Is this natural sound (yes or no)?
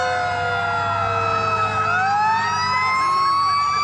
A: yes